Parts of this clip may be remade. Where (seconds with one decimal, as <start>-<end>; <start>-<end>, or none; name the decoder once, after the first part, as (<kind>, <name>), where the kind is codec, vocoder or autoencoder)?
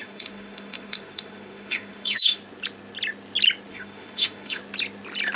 0.0-2.4 (autoencoder, DAC-VAE); 3.7-4.6